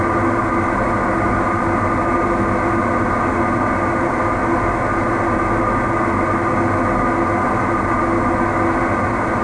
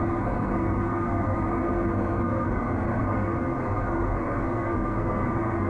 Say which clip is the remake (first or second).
second